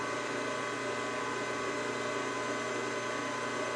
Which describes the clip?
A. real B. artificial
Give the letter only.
A